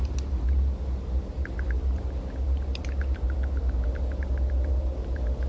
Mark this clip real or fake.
real